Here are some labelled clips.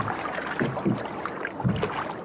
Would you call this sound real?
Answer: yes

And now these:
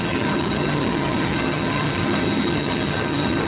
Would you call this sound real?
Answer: no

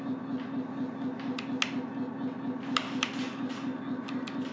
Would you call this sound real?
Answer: yes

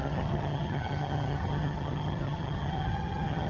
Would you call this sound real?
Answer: no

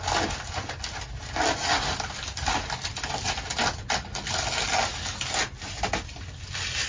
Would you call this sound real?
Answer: yes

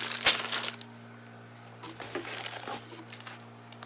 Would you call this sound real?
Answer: yes